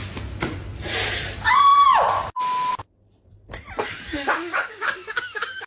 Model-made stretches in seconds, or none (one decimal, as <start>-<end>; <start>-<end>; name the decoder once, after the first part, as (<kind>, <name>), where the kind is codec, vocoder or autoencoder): 4.3-5.7 (codec, DAC)